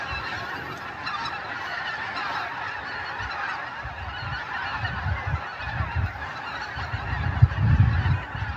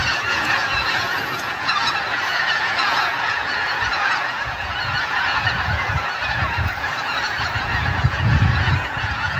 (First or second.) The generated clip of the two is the second